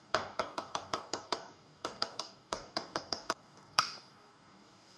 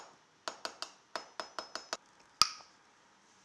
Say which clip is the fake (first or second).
first